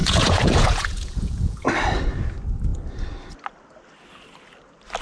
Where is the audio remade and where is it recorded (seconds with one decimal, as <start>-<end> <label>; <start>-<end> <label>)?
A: 0.0-1.7 remade; 1.7-5.0 recorded

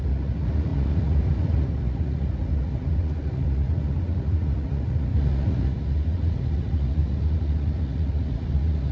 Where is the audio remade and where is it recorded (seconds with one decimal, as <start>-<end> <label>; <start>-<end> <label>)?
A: 0.0-8.9 remade

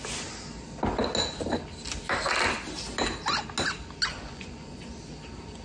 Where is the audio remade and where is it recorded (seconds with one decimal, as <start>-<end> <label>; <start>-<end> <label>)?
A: 0.0-4.1 recorded; 4.1-4.9 remade; 4.9-5.6 recorded

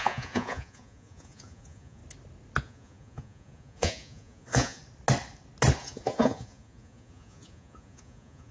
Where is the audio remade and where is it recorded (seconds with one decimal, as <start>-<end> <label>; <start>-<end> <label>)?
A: 0.0-2.0 remade; 2.0-2.6 recorded; 2.6-4.8 remade; 4.8-5.8 recorded; 5.8-8.5 remade

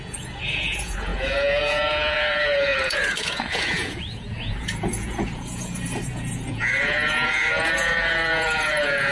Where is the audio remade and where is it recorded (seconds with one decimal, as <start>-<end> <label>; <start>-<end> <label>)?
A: 0.0-9.1 remade

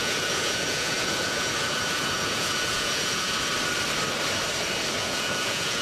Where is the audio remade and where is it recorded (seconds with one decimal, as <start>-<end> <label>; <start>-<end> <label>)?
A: 0.0-3.5 remade; 3.5-5.0 recorded; 5.0-5.8 remade

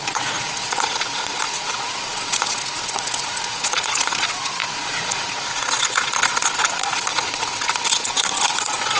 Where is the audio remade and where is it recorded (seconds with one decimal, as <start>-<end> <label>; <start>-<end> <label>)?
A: 0.0-9.0 remade